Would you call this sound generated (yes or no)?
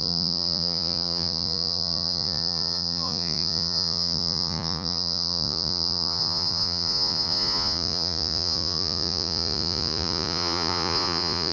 yes